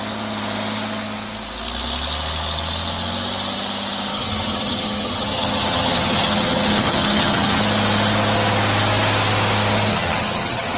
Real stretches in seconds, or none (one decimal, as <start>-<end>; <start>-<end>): 0.0-4.1; 7.6-9.9

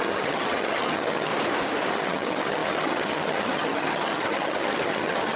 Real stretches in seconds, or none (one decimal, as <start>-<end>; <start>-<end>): 1.3-1.9

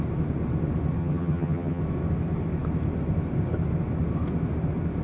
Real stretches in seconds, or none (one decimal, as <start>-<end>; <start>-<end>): 0.0-1.0; 1.8-5.0

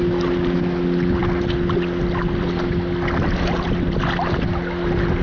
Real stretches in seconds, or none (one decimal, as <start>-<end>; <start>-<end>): 0.0-5.2

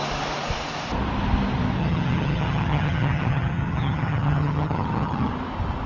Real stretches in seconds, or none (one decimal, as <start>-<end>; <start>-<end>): 0.0-1.8; 5.3-5.9